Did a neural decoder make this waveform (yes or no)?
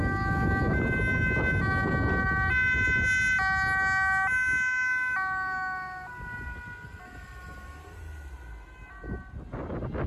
no